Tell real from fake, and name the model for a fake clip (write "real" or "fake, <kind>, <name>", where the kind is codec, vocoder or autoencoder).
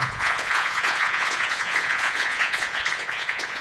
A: fake, vocoder, Vocos